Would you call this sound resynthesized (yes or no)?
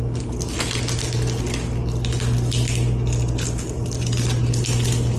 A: no